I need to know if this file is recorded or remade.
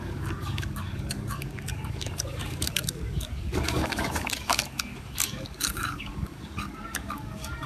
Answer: remade